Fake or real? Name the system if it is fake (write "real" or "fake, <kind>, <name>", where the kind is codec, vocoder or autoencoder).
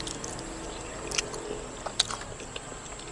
real